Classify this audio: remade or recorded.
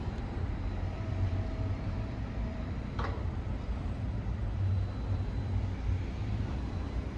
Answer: remade